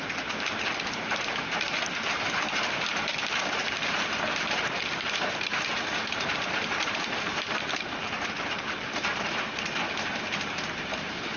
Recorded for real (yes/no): no